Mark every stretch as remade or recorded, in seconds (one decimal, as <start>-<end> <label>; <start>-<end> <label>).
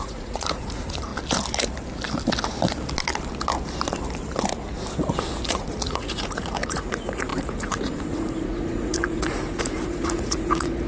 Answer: 0.0-1.1 remade; 1.1-5.5 recorded; 5.5-10.9 remade